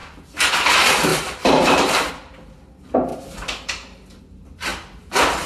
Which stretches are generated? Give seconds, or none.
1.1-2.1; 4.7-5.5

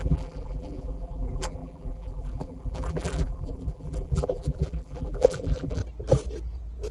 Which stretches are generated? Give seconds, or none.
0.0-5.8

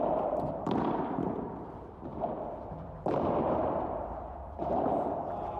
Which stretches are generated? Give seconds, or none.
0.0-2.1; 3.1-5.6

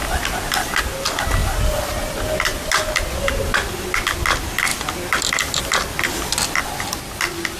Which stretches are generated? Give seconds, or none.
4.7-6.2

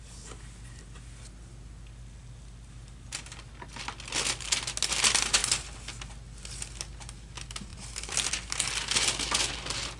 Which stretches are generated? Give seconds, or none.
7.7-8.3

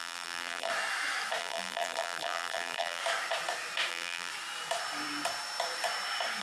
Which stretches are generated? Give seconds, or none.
0.0-0.7; 1.4-3.0; 3.9-4.3